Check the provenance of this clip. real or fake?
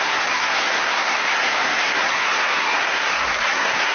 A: fake